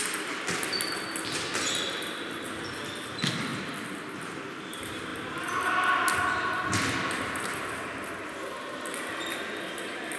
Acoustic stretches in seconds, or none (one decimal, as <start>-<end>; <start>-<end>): 0.0-3.5; 4.1-10.2